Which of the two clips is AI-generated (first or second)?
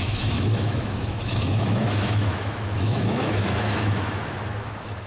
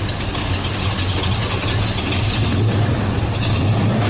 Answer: first